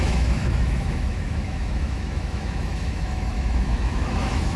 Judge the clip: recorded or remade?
remade